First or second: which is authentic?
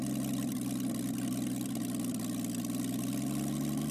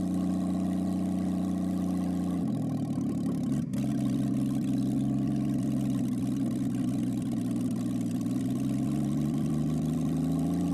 first